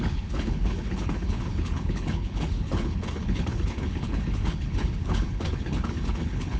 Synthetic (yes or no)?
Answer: yes